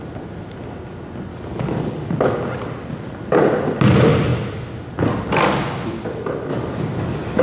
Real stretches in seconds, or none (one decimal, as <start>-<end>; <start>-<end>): 0.0-1.3; 2.1-6.5